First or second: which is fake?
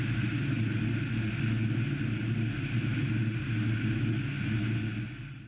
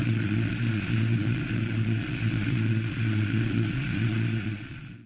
second